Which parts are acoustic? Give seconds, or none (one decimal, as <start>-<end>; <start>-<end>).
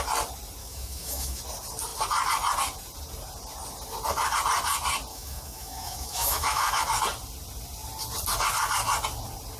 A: 0.0-0.6; 1.4-5.1; 6.8-9.6